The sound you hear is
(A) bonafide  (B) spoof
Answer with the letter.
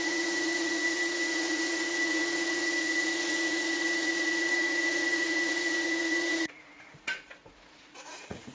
B